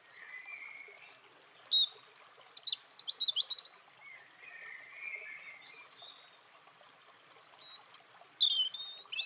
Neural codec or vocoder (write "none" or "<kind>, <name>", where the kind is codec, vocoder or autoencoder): none